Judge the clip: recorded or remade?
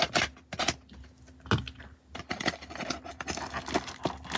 recorded